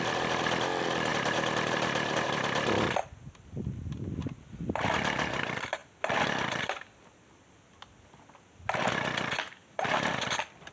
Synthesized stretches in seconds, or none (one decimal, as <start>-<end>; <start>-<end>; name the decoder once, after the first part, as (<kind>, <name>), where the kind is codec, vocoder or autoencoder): 0.0-10.7 (vocoder, BigVGAN v2)